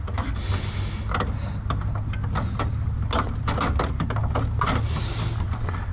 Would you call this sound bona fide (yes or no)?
yes